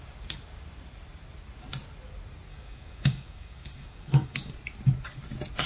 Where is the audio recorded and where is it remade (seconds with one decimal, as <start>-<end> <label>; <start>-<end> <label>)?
0.0-2.5 recorded; 2.5-4.5 remade; 4.5-5.7 recorded